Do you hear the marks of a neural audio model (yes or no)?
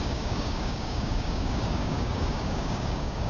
yes